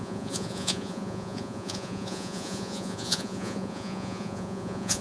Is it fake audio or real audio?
fake